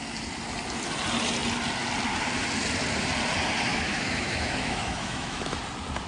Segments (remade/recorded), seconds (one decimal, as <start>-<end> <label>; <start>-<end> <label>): 0.0-3.7 recorded; 3.7-5.6 remade; 5.6-6.1 recorded